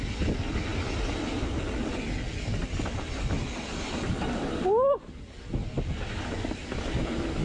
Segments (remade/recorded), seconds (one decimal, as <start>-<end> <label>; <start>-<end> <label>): 0.0-7.4 recorded